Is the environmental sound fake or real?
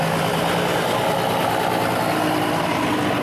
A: real